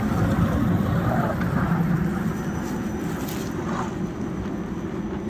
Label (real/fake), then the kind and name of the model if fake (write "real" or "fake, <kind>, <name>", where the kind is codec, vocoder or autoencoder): real